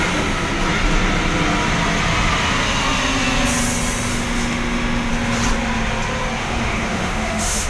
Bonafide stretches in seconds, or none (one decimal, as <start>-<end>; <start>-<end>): 0.0-4.1; 5.1-6.4